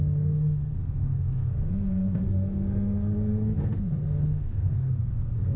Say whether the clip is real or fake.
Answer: fake